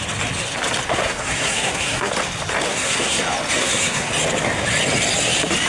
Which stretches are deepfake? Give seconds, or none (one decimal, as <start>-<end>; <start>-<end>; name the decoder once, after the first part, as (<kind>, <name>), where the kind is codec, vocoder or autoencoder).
0.9-2.1 (codec, SNAC); 2.7-3.2; 3.6-4.1